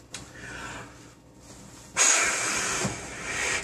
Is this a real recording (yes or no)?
yes